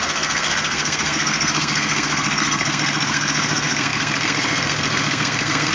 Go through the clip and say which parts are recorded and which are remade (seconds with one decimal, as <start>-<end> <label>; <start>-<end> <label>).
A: 0.0-5.7 remade